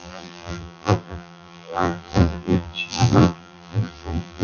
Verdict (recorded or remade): remade